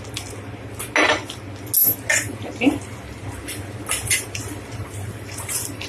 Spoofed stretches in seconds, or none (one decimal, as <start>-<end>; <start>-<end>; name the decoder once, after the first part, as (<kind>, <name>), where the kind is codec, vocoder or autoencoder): 4.8-5.9 (vocoder, BigVGAN v2)

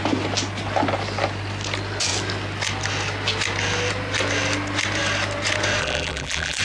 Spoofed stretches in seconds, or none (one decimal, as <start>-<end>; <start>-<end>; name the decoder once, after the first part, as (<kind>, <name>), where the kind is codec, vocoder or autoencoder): 5.8-6.6 (vocoder, BigVGAN v2)

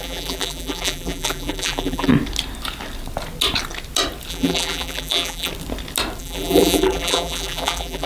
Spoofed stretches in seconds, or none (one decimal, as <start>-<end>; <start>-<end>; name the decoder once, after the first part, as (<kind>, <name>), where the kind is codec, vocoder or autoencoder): 0.0-2.1 (vocoder, BigVGAN v2); 4.3-5.5; 6.2-8.1

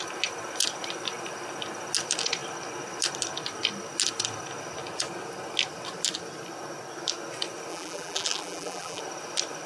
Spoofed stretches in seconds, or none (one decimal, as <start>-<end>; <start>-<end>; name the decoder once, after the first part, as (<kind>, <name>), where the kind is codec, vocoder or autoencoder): 7.7-9.0 (vocoder, BigVGAN v2)

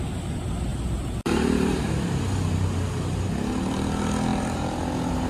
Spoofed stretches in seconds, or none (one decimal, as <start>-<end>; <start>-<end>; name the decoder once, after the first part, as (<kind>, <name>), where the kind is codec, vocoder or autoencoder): 0.7-2.2 (vocoder, BigVGAN v2); 4.3-5.3

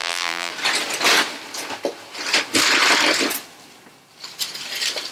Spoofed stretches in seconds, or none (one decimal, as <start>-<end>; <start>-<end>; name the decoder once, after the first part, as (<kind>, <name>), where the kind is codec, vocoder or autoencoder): 0.0-0.5 (vocoder, BigVGAN v2)

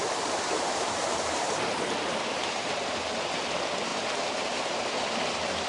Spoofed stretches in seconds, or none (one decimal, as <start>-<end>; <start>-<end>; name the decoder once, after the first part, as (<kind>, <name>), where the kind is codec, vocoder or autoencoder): 0.0-3.4 (vocoder, BigVGAN v2); 3.9-4.8